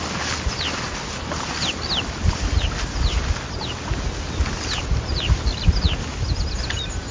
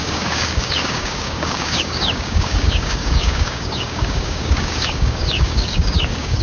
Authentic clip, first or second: first